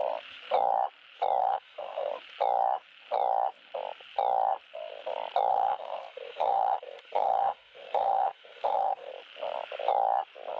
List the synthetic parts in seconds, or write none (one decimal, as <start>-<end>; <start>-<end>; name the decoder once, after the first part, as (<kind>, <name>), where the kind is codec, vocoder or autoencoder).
1.4-2.1 (autoencoder, DAC-VAE); 5.5-9.1